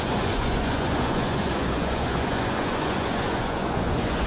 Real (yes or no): no